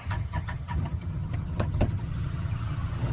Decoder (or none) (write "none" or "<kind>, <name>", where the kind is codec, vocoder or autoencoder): vocoder, HiFi-GAN